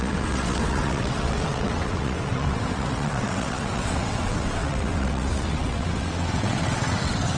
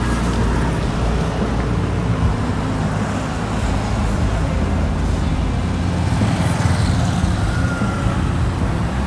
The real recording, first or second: second